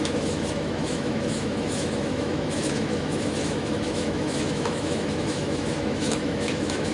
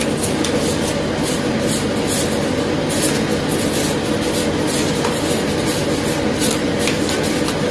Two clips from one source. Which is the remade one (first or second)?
first